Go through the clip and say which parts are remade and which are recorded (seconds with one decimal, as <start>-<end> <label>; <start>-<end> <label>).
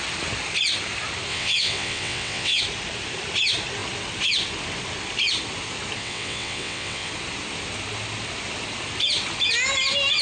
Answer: 0.0-1.3 recorded; 1.3-2.6 remade; 2.6-6.0 recorded; 6.0-7.1 remade; 7.1-10.2 recorded